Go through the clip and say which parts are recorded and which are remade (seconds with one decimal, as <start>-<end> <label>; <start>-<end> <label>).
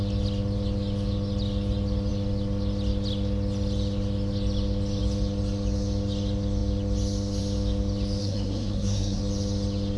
0.0-8.2 recorded; 8.2-9.2 remade; 9.2-10.0 recorded